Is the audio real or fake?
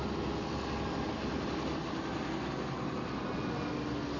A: real